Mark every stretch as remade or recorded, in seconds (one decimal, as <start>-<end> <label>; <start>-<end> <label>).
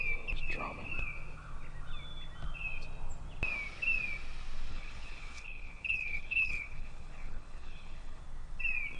0.0-4.7 recorded; 4.7-8.2 remade; 8.2-9.0 recorded